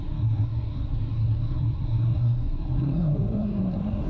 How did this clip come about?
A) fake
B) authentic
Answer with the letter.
A